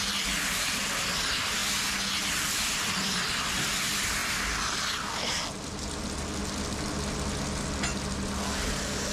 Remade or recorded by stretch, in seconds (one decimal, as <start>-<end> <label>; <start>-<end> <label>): 0.0-1.6 remade; 1.6-2.2 recorded; 2.2-4.2 remade; 4.2-9.1 recorded